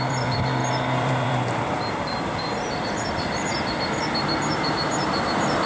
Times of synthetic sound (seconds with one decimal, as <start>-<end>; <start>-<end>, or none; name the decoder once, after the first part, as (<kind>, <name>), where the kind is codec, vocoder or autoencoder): 0.0-5.7 (vocoder, BigVGAN v2)